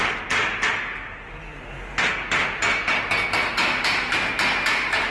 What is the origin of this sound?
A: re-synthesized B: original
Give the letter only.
B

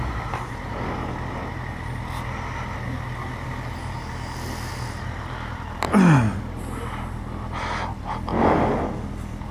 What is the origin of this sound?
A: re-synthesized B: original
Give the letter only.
B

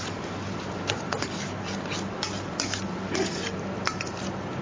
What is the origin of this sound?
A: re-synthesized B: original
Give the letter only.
B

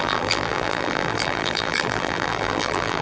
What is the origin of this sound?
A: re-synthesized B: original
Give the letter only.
A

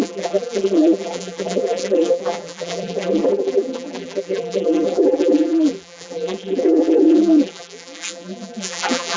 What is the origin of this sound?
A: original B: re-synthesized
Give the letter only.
B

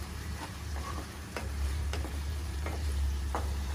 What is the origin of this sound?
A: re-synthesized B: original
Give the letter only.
A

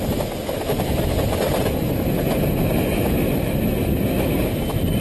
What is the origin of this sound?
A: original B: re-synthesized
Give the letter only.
A